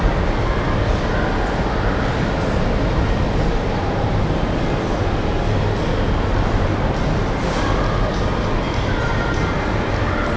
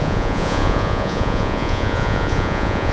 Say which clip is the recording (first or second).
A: first